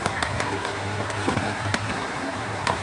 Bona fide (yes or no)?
no